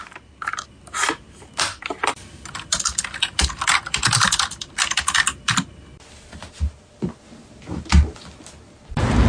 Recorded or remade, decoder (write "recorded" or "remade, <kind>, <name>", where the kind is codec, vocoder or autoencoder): recorded